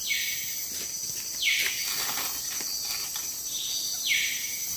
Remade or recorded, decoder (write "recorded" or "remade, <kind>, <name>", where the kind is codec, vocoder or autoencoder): recorded